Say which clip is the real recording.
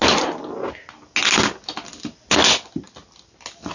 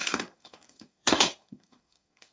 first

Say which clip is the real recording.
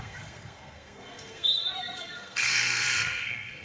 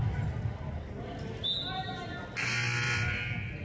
second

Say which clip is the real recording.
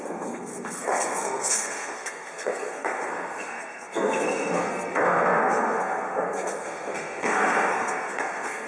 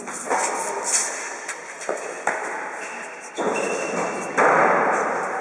second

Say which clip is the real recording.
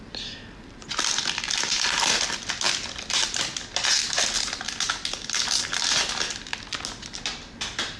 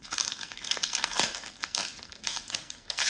first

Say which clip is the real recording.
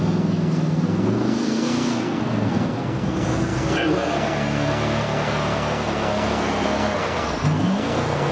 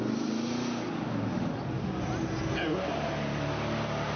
second